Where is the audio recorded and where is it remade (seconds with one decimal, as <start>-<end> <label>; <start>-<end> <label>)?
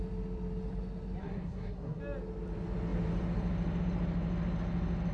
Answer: 0.0-1.2 recorded; 1.2-2.0 remade; 2.0-5.1 recorded